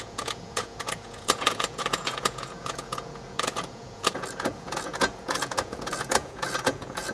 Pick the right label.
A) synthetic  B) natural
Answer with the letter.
A